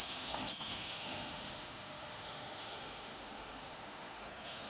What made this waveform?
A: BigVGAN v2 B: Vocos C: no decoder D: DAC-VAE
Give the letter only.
D